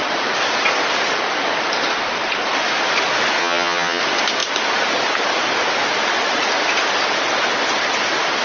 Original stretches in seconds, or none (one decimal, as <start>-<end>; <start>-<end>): 0.0-3.4; 4.0-8.4